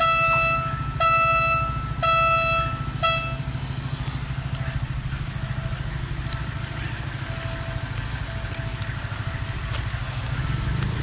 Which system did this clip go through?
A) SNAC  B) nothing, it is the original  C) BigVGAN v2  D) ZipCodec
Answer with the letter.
B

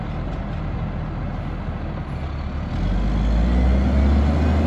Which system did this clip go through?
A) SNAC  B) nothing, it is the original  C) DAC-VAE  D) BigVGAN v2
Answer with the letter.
B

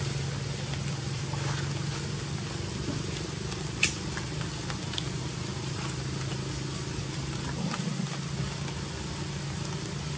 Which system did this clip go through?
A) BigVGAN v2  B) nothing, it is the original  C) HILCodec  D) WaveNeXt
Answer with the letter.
B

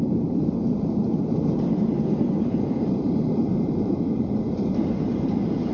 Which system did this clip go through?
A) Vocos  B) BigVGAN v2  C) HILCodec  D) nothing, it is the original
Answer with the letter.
B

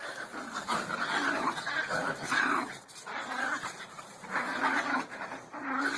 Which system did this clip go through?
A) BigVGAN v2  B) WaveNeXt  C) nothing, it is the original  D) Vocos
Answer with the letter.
A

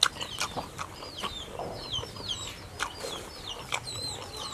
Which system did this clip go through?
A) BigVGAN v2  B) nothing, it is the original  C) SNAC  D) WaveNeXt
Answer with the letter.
A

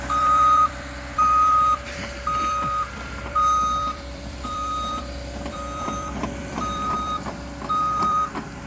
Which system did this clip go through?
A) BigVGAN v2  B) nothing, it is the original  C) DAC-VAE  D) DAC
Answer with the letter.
A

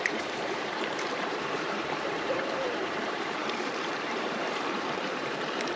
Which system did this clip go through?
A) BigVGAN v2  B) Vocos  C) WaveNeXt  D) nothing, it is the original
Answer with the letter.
A